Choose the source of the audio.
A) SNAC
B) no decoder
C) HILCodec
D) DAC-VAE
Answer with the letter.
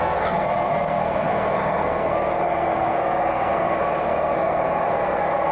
A